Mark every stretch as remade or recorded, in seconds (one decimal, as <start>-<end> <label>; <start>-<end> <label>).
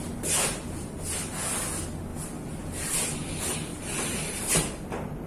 0.0-3.7 recorded; 3.7-4.4 remade; 4.4-5.3 recorded